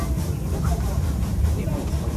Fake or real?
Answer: fake